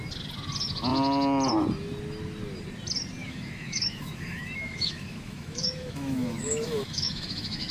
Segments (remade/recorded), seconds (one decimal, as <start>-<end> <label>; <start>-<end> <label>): 0.0-3.2 recorded; 3.2-7.7 remade